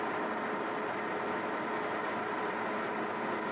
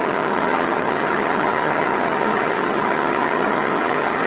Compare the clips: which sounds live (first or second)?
first